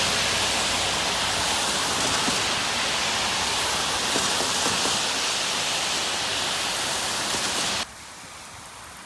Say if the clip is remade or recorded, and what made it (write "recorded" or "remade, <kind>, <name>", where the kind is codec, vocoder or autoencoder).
recorded